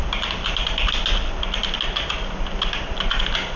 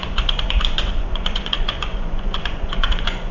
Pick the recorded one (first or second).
first